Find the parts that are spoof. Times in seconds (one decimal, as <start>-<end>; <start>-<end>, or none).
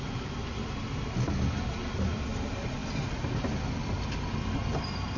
none